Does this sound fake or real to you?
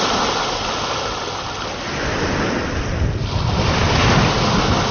real